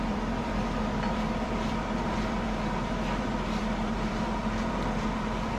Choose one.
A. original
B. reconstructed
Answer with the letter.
B